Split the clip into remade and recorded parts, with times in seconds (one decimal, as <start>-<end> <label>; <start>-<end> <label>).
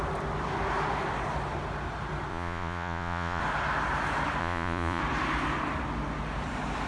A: 0.0-2.3 recorded; 2.3-3.4 remade; 3.4-4.4 recorded; 4.4-5.0 remade; 5.0-6.9 recorded